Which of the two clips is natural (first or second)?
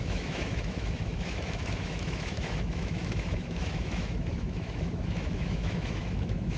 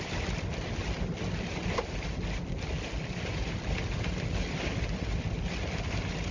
second